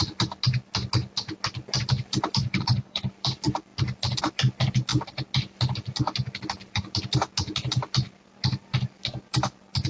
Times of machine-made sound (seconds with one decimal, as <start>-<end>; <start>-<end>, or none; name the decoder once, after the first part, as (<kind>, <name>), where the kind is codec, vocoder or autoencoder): 2.4-3.1 (codec, HILCodec)